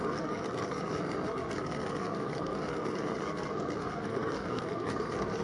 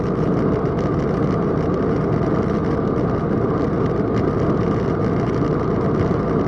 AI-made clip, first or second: first